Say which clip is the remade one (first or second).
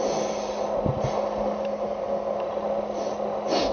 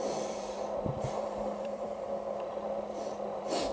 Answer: second